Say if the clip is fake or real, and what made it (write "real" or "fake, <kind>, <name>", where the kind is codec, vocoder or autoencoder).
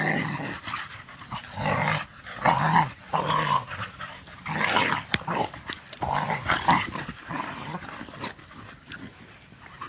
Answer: real